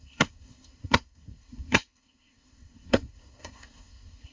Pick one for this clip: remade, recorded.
remade